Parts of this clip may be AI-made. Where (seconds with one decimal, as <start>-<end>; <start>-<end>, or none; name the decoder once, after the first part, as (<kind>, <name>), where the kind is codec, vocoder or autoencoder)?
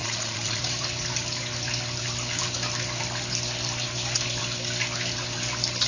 0.0-0.6 (vocoder, Vocos)